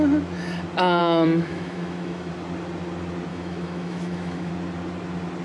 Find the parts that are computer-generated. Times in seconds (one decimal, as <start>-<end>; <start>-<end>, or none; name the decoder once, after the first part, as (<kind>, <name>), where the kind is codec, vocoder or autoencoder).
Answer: 1.0-2.3 (autoencoder, DAC-VAE); 3.3-4.5